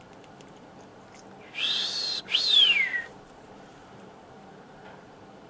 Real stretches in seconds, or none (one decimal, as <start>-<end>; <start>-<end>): 0.9-2.2